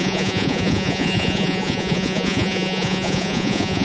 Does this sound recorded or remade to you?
remade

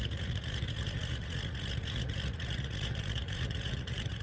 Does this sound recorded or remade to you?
remade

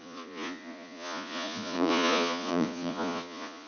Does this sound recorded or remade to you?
remade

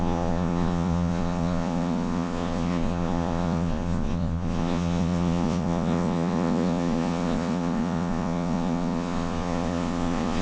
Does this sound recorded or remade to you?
remade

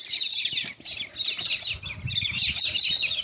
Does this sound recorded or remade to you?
recorded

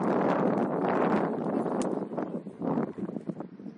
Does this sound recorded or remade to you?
recorded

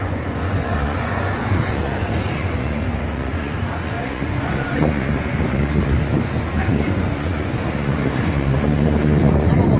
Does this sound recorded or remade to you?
remade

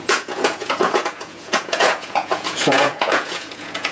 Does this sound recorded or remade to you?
remade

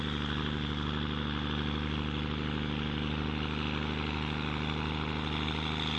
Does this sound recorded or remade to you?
recorded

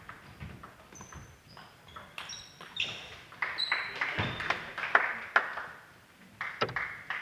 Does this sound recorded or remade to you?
recorded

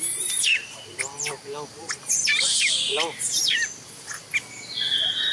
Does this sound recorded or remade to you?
recorded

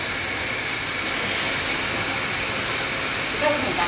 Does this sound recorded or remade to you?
recorded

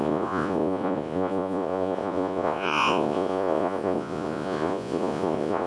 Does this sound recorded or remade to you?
remade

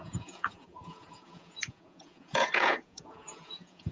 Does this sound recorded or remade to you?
remade